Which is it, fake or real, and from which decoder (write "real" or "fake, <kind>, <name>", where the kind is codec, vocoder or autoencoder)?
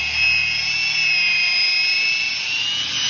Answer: real